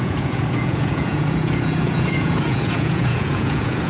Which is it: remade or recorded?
remade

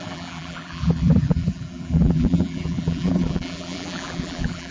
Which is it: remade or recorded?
remade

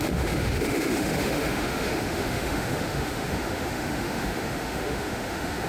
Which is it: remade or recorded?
remade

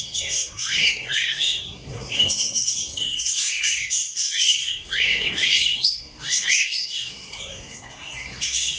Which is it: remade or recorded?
remade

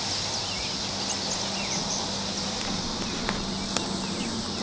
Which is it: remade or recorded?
recorded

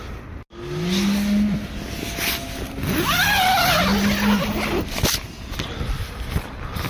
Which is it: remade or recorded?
recorded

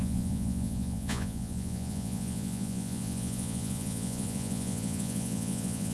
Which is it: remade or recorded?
remade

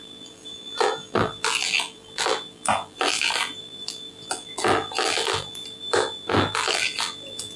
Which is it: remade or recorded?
remade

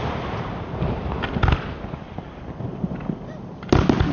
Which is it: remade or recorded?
recorded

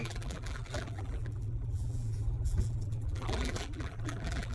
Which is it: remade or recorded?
remade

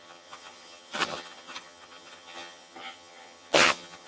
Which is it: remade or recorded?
remade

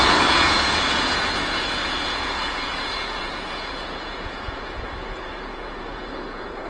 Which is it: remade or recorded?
remade